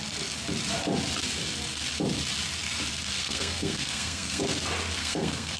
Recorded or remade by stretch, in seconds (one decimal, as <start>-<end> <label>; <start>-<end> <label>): 0.0-3.2 recorded; 3.2-4.4 remade; 4.4-5.0 recorded; 5.0-5.6 remade